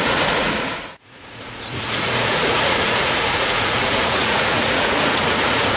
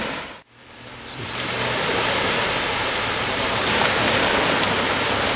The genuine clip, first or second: second